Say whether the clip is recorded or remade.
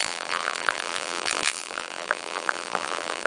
remade